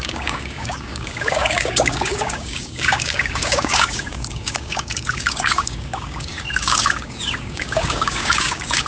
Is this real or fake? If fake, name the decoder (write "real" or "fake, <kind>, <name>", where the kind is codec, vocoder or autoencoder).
fake, codec, DAC